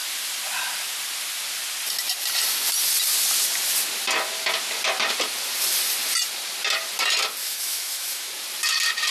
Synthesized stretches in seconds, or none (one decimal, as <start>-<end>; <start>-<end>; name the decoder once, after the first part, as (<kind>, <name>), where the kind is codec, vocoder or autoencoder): 7.4-8.3 (autoencoder, DAC-VAE)